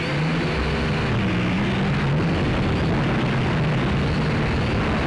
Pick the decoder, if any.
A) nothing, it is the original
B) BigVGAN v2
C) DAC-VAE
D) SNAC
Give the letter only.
A